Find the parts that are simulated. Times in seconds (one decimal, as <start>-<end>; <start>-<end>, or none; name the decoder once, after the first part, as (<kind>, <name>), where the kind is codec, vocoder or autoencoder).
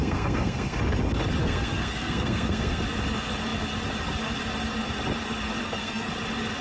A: 0.0-0.8 (codec, SNAC); 1.4-2.8; 5.6-6.1